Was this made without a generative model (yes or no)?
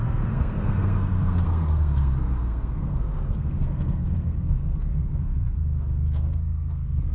no